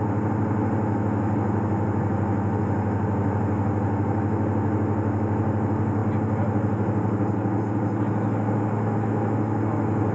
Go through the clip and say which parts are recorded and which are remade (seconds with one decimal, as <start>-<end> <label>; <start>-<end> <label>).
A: 0.0-10.1 recorded